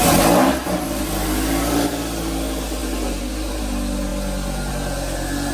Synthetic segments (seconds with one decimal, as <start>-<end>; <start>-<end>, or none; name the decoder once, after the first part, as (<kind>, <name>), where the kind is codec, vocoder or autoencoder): none